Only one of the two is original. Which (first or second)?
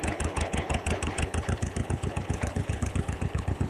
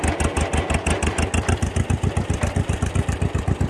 second